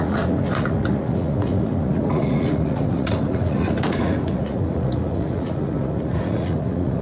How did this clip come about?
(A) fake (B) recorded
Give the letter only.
A